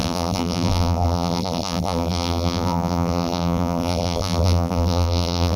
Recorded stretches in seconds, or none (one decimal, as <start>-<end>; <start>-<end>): none